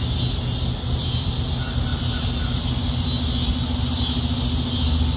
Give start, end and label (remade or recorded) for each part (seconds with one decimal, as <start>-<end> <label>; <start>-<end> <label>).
0.0-5.2 recorded